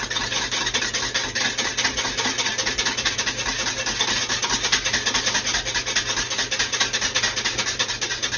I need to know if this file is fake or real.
real